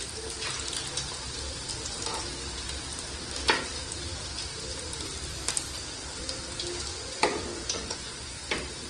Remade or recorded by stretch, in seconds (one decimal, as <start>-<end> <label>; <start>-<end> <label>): 0.0-6.9 recorded; 6.9-8.4 remade; 8.4-8.9 recorded